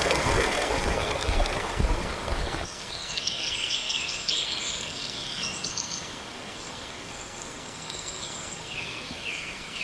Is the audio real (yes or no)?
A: no